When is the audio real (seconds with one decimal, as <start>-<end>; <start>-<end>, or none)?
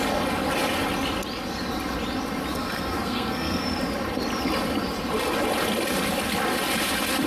0.0-2.5; 3.6-7.3